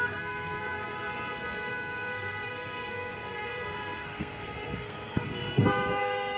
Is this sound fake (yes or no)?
yes